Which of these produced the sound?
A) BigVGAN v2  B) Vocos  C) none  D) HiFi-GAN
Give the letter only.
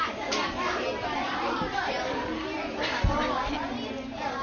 C